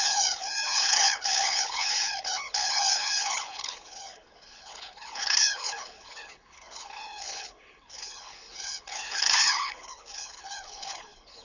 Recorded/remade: remade